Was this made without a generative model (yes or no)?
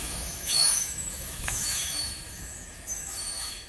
no